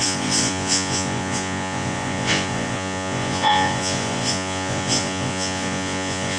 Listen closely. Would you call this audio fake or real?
fake